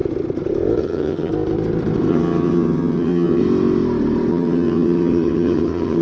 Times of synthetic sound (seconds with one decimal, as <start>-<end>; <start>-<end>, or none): 0.8-1.3; 2.1-3.4; 4.3-6.0

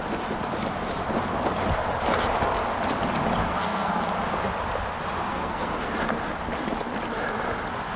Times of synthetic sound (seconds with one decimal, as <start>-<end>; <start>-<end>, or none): 3.4-4.0; 5.3-5.9

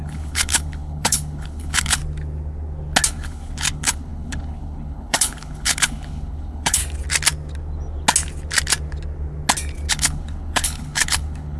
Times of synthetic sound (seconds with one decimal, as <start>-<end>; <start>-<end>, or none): 0.0-2.0; 3.1-6.8; 9.9-11.6

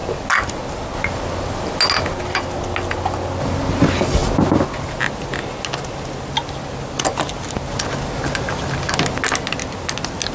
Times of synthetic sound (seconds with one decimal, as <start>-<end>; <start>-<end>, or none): none

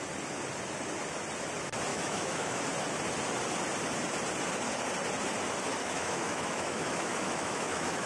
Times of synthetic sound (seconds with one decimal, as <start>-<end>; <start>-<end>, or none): 1.9-2.6; 5.8-8.1

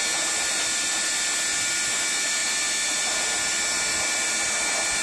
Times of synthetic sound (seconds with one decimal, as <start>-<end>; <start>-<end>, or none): none